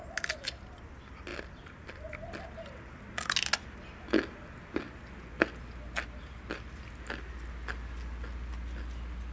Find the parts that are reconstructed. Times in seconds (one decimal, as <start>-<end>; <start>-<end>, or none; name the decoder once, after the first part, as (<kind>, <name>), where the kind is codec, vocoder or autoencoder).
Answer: none